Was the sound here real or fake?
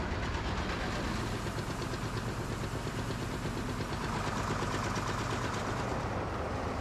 real